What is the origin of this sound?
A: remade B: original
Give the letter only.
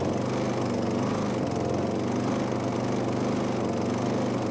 B